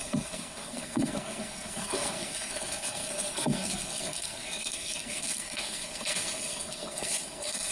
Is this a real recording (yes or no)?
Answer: no